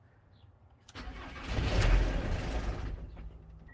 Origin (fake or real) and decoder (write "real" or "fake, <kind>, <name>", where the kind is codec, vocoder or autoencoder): real